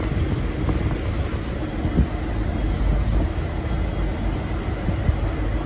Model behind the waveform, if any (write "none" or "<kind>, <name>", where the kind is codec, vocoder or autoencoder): none